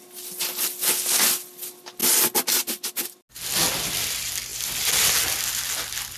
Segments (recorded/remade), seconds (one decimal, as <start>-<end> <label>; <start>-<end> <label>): 0.0-2.0 recorded; 2.0-2.9 remade; 2.9-4.5 recorded; 4.5-5.1 remade; 5.1-6.2 recorded